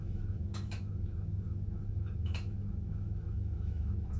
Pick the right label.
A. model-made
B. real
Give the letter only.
A